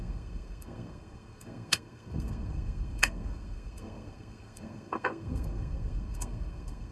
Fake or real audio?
fake